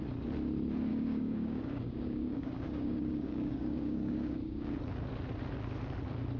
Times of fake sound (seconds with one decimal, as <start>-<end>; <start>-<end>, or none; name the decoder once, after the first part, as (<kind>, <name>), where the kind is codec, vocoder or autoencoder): 0.9-4.7 (codec, DAC)